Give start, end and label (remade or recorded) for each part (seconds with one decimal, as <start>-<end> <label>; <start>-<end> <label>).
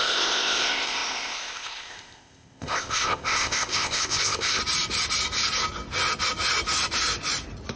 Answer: 0.0-4.6 remade; 4.6-7.8 recorded